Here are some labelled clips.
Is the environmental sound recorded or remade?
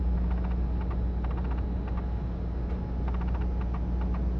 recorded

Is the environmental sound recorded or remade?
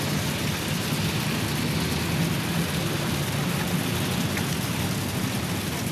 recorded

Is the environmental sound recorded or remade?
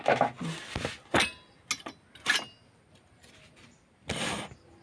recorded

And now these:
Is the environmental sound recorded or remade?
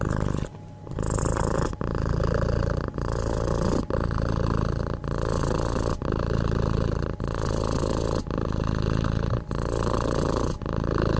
recorded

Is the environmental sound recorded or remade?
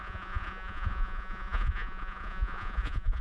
remade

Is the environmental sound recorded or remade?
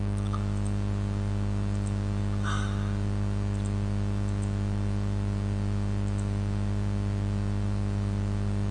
recorded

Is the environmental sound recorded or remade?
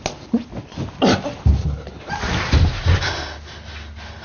recorded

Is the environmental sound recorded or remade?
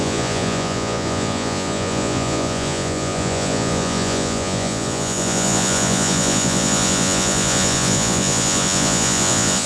remade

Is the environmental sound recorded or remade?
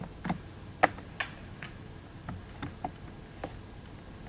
recorded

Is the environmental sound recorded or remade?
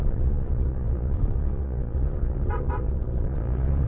remade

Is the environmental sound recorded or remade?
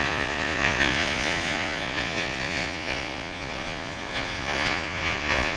remade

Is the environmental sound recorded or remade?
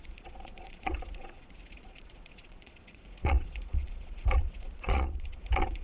remade